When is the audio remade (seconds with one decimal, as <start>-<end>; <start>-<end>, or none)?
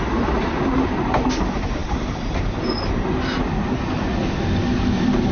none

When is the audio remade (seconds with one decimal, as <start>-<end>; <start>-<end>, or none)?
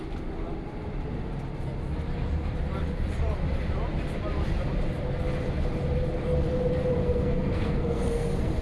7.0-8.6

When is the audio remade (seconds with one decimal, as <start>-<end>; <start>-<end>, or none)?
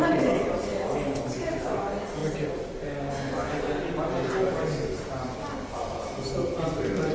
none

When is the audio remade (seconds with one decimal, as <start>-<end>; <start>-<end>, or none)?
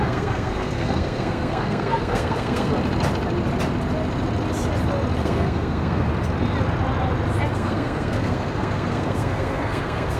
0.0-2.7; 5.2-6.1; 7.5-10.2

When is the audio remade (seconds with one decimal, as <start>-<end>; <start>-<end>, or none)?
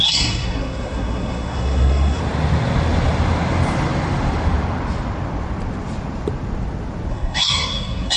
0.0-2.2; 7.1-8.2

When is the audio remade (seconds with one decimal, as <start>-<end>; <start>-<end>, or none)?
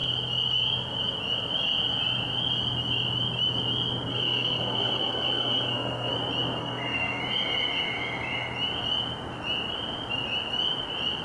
4.1-6.1; 6.6-7.2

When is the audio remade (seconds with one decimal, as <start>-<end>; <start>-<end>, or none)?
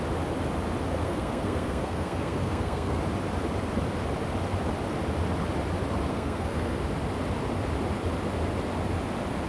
1.0-3.0; 6.1-6.8